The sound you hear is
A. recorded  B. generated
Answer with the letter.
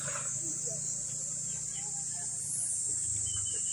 A